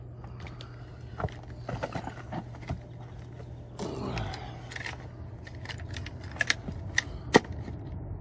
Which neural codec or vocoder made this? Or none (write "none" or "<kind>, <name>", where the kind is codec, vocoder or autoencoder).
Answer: none